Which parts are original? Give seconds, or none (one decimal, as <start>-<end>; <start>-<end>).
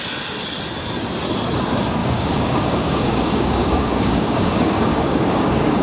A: 0.0-2.0